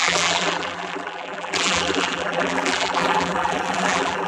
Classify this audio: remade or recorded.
remade